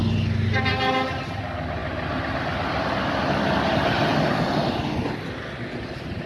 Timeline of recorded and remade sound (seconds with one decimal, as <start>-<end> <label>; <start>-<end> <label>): 0.0-6.3 recorded